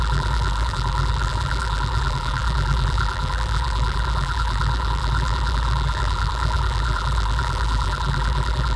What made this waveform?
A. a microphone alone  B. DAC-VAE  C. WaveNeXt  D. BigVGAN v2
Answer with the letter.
D